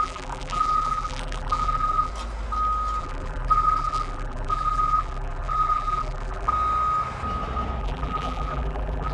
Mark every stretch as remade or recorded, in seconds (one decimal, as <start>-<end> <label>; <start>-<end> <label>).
0.0-2.1 remade; 2.1-3.0 recorded; 3.0-6.5 remade; 6.5-7.8 recorded; 7.8-9.1 remade